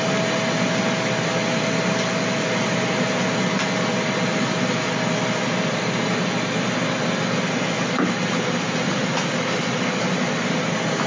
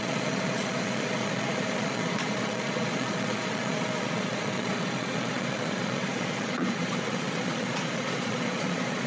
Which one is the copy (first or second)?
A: second